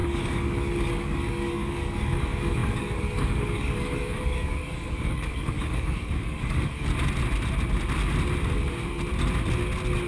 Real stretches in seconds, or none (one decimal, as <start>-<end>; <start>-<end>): 6.9-10.1